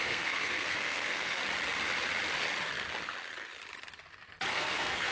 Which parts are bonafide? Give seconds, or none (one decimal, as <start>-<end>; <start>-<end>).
1.4-4.5